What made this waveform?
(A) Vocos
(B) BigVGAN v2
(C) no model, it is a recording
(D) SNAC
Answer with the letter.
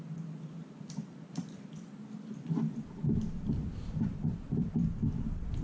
B